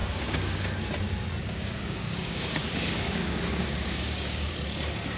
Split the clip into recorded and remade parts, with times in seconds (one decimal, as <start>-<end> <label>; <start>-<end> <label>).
0.0-0.7 remade; 0.7-1.4 recorded; 1.4-4.5 remade; 4.5-5.2 recorded